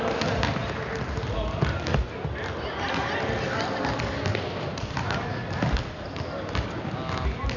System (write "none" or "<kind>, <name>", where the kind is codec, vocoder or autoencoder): none